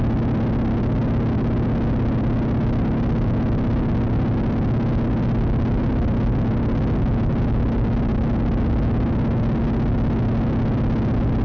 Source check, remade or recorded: recorded